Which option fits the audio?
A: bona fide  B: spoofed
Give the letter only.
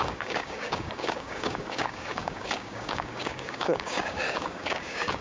B